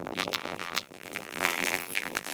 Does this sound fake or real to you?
fake